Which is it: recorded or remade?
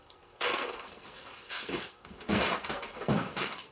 remade